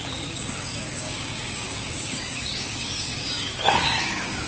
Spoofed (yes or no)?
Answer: yes